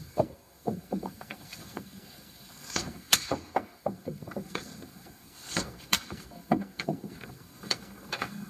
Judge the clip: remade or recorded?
remade